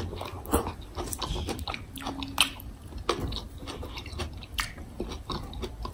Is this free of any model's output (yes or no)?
yes